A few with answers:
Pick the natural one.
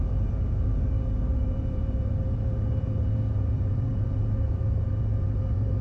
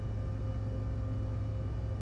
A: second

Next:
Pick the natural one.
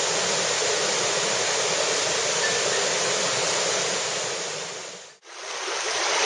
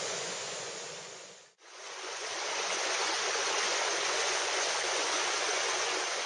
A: first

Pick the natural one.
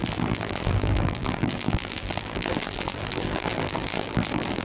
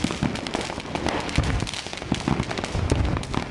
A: second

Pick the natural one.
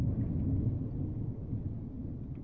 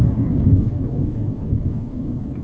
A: first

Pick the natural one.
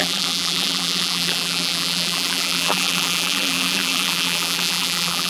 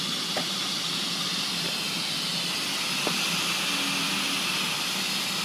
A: second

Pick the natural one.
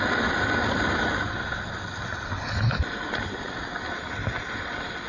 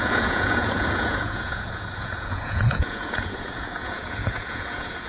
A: first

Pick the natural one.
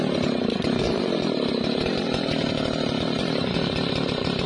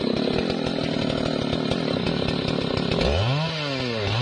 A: second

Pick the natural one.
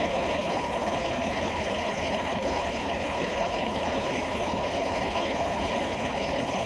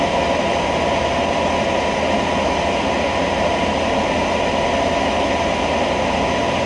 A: second